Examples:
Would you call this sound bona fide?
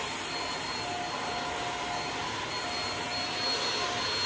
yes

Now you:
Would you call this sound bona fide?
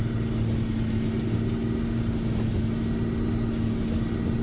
yes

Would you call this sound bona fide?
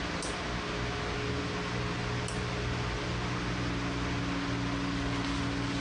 yes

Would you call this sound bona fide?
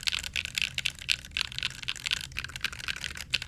yes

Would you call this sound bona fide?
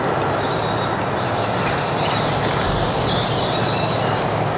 yes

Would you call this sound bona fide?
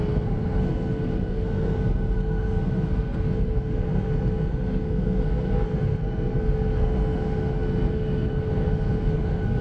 no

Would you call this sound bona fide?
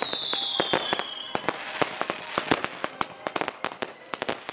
yes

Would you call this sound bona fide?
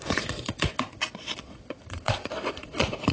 no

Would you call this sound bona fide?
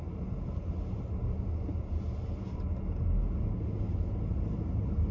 yes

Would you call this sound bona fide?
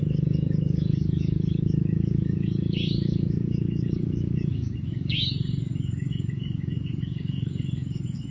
no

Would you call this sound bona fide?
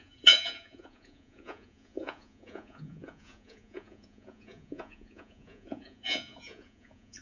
no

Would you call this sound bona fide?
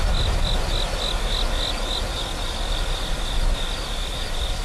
yes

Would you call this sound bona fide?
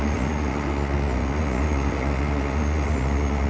no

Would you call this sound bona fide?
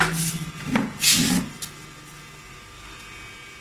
yes